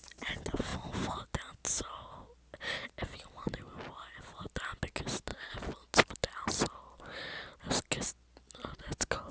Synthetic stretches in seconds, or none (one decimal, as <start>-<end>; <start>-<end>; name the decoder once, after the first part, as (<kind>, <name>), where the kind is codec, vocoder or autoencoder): none